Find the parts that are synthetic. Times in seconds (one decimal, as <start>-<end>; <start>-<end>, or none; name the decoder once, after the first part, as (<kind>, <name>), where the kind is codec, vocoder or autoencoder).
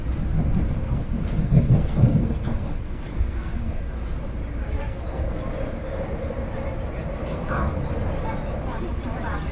0.8-3.8 (codec, SNAC); 4.8-5.4; 7.2-7.8